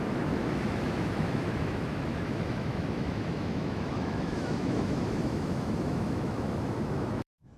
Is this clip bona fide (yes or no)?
no